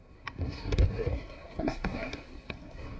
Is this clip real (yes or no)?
no